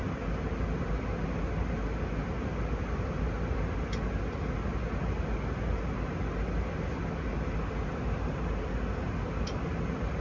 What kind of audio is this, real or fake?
real